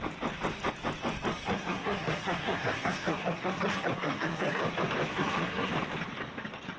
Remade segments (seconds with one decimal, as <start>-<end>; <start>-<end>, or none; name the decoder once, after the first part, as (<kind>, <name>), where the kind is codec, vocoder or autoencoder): 1.3-4.6 (codec, SNAC); 5.1-5.7